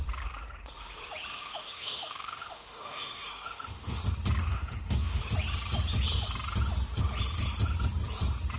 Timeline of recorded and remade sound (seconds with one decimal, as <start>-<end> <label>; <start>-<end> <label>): 0.0-1.3 recorded; 1.3-4.0 remade; 4.0-4.5 recorded; 4.5-5.2 remade; 5.2-8.6 recorded